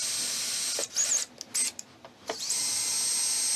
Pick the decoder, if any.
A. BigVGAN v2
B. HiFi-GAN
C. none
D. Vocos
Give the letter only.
C